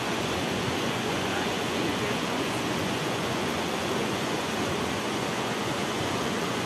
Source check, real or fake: fake